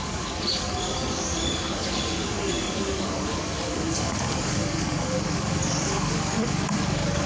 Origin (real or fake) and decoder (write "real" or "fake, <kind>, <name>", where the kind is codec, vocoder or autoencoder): fake, codec, DAC